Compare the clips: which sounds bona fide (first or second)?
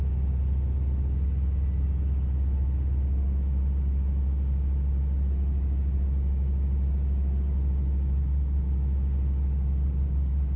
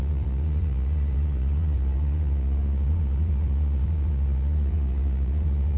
first